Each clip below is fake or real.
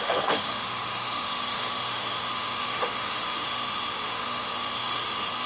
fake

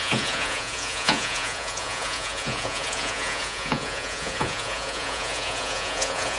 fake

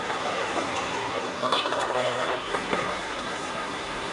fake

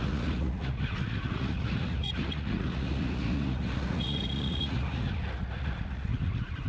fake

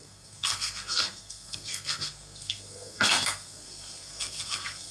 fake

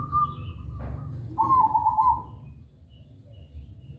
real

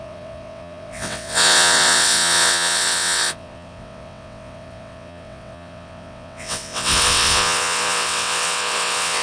fake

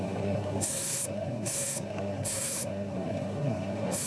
fake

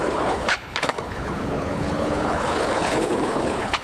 fake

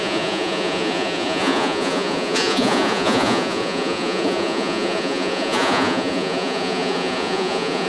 fake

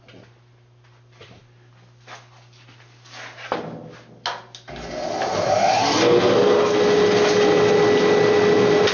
real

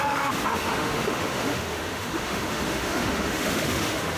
fake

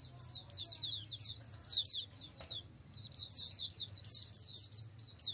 real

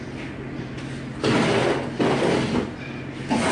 real